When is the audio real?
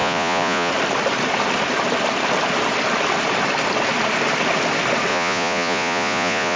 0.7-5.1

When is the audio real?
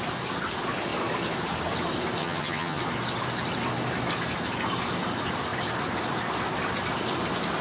0.0-2.2; 2.8-7.6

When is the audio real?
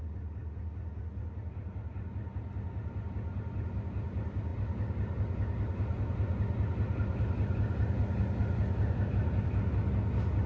0.0-10.5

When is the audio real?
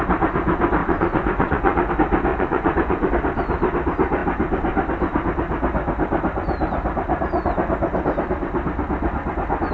0.0-0.8; 1.9-2.3; 3.1-9.7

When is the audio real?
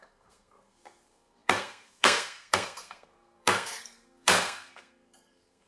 none